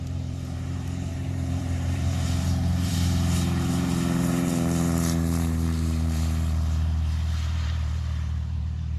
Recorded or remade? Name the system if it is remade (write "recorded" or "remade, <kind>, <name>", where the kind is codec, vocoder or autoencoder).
remade, vocoder, BigVGAN v2